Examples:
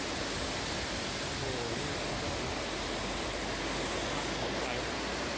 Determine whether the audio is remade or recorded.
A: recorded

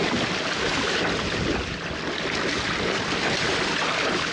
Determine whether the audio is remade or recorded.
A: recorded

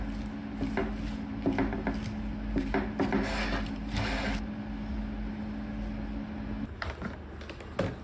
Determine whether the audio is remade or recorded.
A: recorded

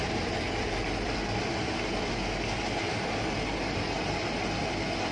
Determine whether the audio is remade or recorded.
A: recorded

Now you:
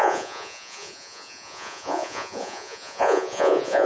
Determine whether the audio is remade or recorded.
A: remade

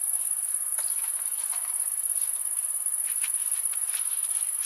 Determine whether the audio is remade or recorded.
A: recorded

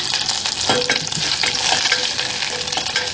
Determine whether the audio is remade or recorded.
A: recorded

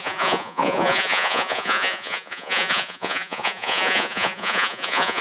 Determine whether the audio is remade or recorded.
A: remade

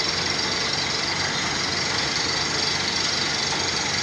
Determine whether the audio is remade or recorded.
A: recorded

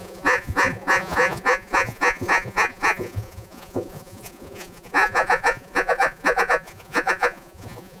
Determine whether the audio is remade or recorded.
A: remade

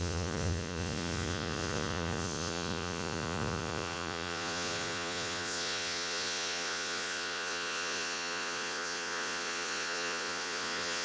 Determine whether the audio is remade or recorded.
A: remade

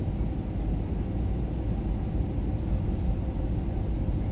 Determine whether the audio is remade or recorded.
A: recorded